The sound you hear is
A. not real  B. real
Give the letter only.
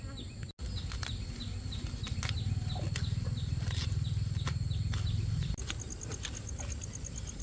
B